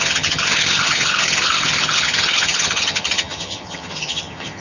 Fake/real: fake